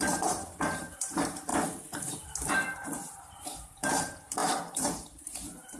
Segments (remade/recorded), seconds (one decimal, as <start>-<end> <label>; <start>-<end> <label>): 0.0-1.5 remade; 1.5-2.5 recorded; 2.5-5.8 remade